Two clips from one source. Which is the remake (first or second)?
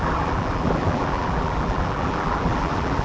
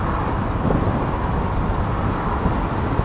first